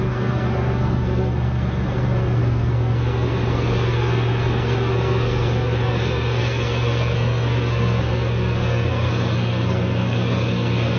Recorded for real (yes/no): no